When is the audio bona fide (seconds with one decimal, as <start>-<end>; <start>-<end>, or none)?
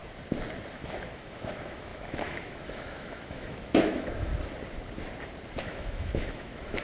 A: 0.0-0.7; 4.3-5.6